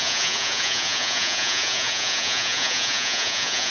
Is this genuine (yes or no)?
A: no